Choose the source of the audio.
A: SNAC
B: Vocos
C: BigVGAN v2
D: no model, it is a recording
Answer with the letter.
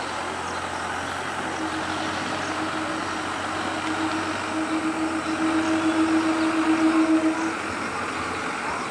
D